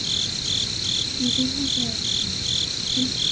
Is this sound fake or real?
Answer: real